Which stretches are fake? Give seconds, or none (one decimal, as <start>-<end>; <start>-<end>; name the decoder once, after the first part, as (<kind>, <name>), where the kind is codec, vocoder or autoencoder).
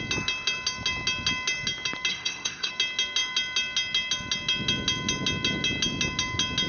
2.1-2.7 (codec, SNAC)